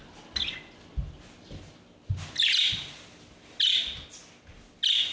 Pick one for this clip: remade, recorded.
recorded